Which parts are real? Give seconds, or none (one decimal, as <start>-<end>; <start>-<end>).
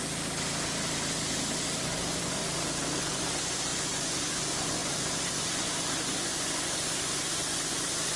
0.0-1.8; 2.4-3.0